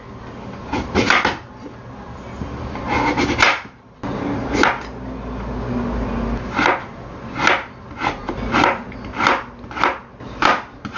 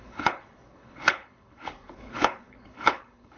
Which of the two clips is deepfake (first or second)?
second